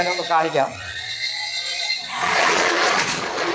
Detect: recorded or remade remade